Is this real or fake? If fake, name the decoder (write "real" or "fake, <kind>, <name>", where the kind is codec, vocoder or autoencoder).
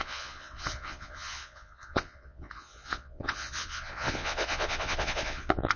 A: fake, vocoder, Vocos